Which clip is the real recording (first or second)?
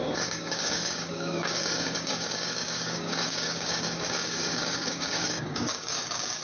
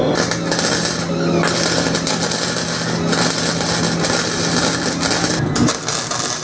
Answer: second